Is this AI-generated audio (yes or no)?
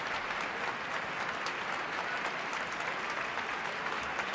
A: no